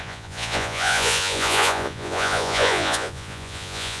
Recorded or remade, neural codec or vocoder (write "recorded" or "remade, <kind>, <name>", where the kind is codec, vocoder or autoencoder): remade, vocoder, Vocos